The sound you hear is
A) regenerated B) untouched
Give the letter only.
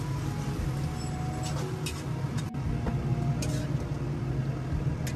B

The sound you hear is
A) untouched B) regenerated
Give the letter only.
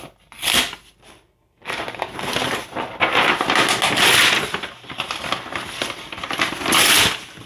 A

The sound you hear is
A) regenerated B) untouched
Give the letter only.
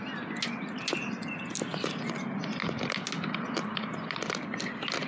B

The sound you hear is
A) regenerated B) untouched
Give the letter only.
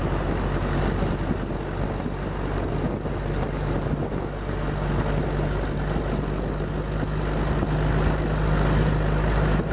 B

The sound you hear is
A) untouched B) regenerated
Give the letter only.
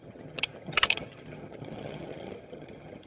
B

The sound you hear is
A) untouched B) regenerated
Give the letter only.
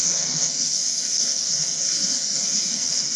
B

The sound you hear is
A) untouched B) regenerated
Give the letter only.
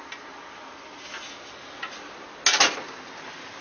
A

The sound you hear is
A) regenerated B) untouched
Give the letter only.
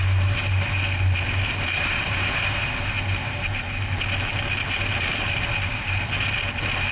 B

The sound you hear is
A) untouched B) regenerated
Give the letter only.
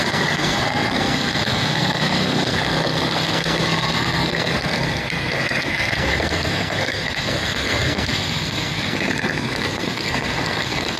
B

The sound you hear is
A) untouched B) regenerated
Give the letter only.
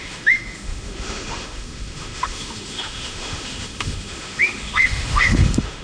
B